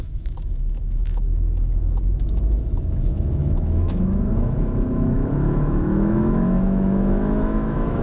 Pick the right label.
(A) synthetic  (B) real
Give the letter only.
A